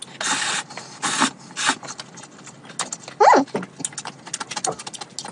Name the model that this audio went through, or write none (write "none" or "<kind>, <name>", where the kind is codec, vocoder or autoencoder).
none